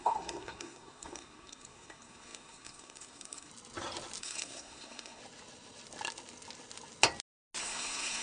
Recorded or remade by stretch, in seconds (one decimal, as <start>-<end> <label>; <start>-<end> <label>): 0.0-3.5 remade; 3.5-4.2 recorded; 4.2-5.2 remade; 5.2-7.6 recorded; 7.6-8.2 remade